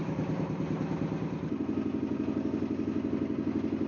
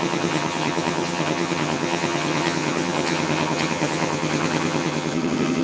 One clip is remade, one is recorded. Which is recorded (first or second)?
first